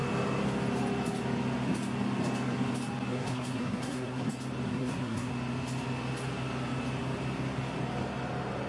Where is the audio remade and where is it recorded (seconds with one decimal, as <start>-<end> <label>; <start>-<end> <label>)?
0.0-3.1 recorded; 3.1-4.3 remade; 4.3-4.7 recorded; 4.7-5.3 remade; 5.3-8.7 recorded